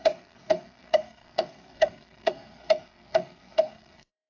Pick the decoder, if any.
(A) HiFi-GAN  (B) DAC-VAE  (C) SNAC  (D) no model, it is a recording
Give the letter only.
C